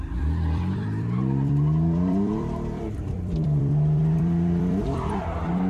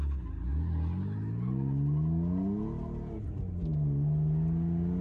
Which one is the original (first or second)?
second